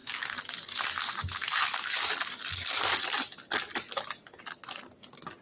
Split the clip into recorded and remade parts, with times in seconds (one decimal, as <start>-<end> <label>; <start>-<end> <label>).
0.0-5.4 recorded